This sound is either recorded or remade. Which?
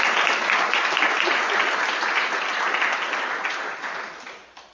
recorded